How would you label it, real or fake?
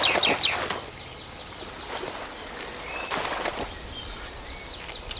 real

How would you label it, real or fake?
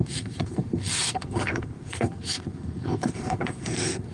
fake